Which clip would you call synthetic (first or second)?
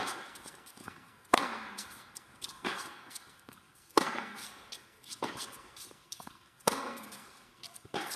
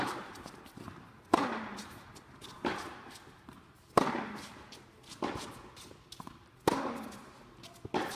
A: first